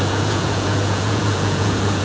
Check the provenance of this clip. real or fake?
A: fake